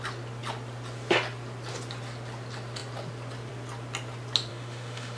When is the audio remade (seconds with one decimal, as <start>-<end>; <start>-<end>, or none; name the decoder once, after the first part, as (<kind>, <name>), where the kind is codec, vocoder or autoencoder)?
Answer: 4.5-5.2 (autoencoder, DAC-VAE)